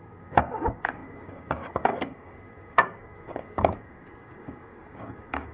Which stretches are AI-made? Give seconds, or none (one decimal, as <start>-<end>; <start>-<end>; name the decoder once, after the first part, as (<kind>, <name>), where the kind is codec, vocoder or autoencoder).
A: 0.0-5.5 (codec, DAC)